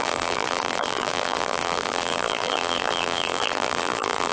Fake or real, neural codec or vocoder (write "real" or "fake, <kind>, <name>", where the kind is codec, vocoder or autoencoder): fake, vocoder, BigVGAN v2